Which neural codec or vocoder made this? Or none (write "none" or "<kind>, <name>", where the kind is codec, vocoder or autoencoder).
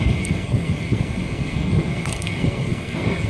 codec, SNAC